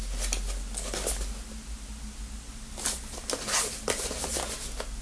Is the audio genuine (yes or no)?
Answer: yes